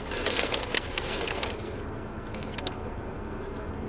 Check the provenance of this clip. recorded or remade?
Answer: remade